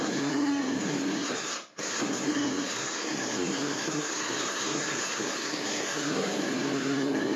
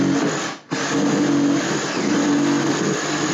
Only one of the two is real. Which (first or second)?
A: second